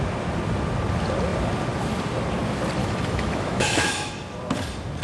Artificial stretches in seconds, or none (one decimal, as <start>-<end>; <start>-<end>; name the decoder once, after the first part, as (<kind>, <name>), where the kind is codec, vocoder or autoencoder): 2.8-4.1 (autoencoder, DAC-VAE)